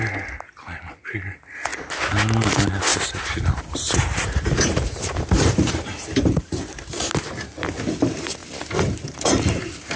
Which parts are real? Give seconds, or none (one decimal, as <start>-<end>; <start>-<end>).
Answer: 0.0-2.9; 6.8-10.0